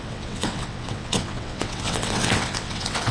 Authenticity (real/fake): fake